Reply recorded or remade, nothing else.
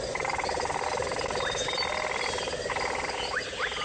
recorded